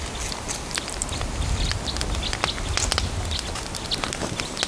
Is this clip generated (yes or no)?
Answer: no